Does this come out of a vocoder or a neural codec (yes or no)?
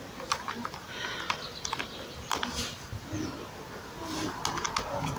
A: no